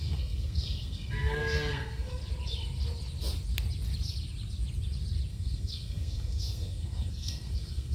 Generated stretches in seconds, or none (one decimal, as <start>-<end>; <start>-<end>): 0.0-2.2; 5.3-7.9